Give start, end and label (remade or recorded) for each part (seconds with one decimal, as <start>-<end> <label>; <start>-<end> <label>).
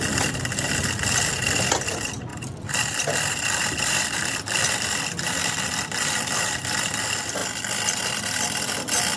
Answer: 0.0-2.3 recorded; 2.3-6.8 remade; 6.8-7.4 recorded; 7.4-7.9 remade; 7.9-9.2 recorded